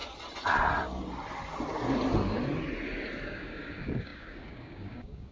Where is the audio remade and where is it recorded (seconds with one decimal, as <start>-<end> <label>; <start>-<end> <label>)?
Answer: 0.0-3.2 recorded; 3.2-5.3 remade